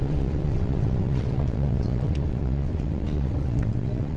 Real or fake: fake